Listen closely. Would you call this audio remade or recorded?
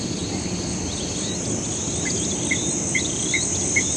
recorded